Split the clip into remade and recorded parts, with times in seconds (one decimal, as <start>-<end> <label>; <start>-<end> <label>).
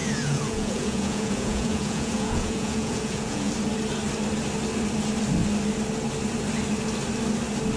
0.0-3.5 remade; 3.5-7.8 recorded